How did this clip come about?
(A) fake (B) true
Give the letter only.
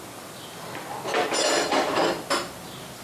B